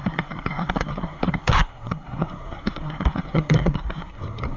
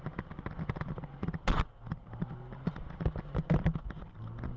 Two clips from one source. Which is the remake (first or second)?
first